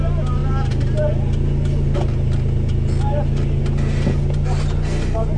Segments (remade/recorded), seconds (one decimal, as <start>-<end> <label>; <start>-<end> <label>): 0.0-5.4 recorded